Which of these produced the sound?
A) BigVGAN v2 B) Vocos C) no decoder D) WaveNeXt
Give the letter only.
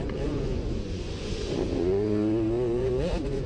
B